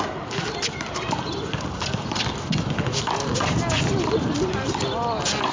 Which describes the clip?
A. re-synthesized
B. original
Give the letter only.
B